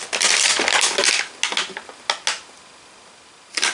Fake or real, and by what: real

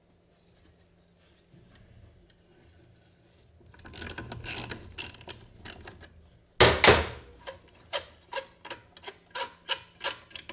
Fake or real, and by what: real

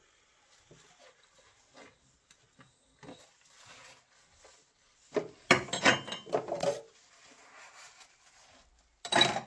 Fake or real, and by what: real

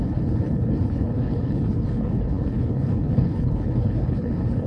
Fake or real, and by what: fake, codec, HILCodec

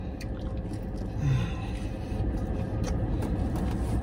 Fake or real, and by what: real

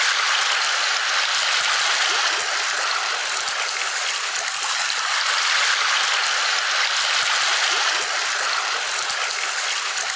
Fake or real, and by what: real